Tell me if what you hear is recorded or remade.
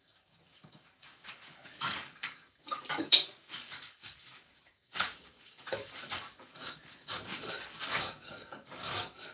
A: remade